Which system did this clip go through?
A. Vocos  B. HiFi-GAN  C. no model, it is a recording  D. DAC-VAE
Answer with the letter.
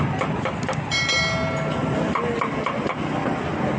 C